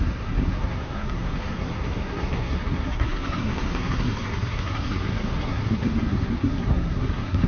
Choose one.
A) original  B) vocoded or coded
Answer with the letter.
B